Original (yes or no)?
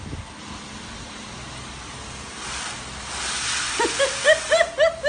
yes